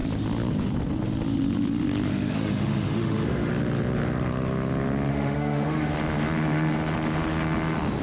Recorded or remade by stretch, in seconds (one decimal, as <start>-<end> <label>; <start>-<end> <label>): 0.0-2.1 recorded; 2.1-3.5 remade; 3.5-5.1 recorded; 5.1-5.9 remade; 5.9-8.0 recorded